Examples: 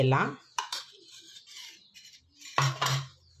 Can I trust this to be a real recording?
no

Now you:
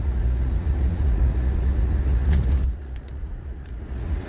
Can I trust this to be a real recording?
no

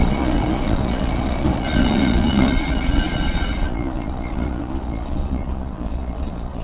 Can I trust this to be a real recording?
no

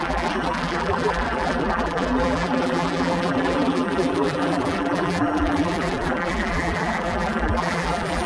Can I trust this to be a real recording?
no